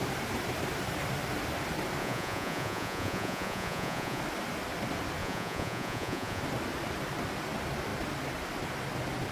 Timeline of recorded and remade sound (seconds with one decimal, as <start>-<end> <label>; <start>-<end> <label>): 0.0-2.0 recorded; 2.0-4.2 remade; 4.2-5.2 recorded; 5.2-6.4 remade; 6.4-9.3 recorded